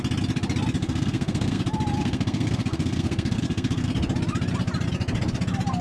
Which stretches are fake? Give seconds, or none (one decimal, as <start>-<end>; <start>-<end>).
0.8-1.6; 2.0-3.9